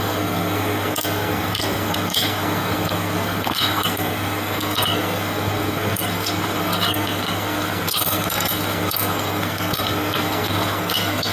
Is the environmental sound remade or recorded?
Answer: remade